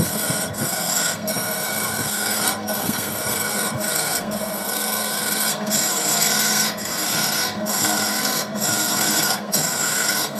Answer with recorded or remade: remade